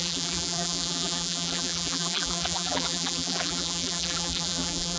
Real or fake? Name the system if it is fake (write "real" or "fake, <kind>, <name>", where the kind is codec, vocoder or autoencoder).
fake, vocoder, BigVGAN v2